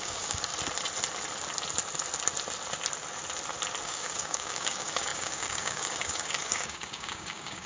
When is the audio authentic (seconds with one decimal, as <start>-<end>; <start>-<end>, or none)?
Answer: 0.5-3.8